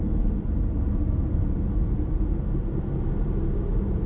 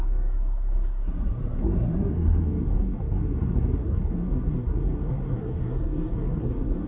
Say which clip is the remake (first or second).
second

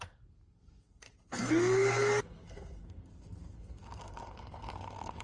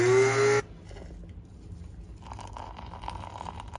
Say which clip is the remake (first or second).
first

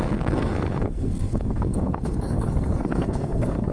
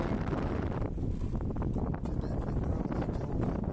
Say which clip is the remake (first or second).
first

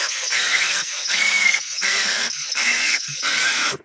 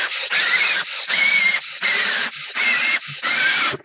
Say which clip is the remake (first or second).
first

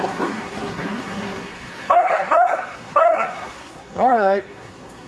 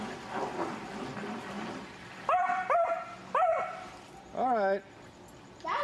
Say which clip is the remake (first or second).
first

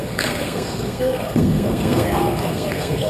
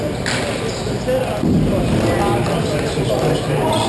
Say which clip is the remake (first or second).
first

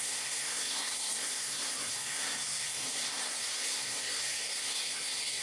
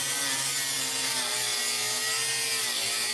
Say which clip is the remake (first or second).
first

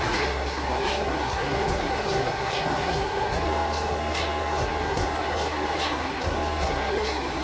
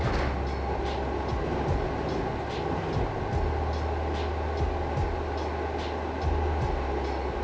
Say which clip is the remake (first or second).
first